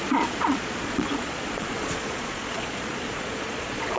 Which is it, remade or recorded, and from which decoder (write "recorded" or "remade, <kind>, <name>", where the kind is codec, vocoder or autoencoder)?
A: remade, vocoder, Vocos